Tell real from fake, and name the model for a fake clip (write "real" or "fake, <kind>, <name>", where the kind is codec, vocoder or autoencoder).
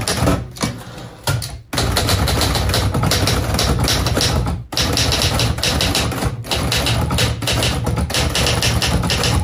real